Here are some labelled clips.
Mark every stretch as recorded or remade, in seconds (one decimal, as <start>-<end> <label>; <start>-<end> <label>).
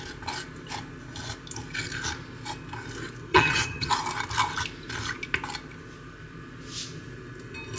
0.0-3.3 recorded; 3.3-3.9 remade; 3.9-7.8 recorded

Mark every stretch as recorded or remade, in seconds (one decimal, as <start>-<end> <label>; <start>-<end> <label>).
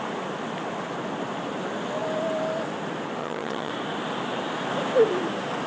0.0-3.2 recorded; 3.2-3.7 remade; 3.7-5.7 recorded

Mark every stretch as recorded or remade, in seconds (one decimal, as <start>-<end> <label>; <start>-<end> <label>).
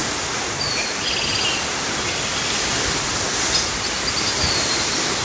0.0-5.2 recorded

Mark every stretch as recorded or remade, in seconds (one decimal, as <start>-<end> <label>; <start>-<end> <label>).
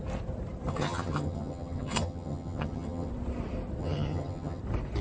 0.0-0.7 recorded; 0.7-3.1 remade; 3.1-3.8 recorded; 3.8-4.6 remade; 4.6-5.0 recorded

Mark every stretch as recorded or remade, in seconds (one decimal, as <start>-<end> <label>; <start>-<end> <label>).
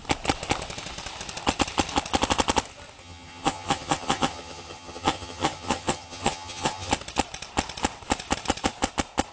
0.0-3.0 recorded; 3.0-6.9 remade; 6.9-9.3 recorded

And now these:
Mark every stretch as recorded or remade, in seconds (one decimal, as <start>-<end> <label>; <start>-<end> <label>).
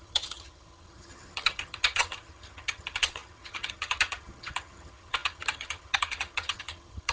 0.0-7.1 remade